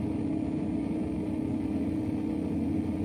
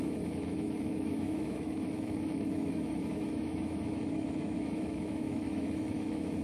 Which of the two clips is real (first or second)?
first